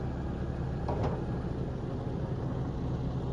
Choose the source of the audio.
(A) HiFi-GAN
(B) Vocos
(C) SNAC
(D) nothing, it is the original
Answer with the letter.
D